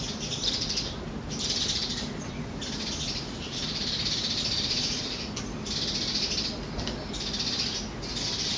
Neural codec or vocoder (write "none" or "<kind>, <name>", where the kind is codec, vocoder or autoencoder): none